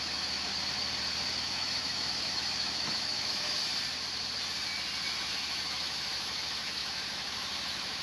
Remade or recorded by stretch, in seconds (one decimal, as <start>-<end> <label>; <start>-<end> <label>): 0.0-0.5 remade; 0.5-1.4 recorded; 1.4-3.6 remade; 3.6-5.3 recorded; 5.3-8.0 remade